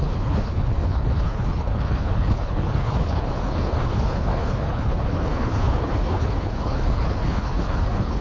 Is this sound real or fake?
fake